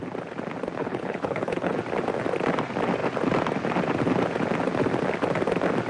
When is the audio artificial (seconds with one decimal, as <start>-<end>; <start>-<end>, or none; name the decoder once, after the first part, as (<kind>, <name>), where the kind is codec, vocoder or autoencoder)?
0.8-1.8 (codec, HILCodec)